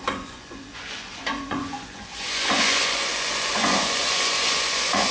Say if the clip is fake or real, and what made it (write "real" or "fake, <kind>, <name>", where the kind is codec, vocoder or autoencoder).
fake, vocoder, Vocos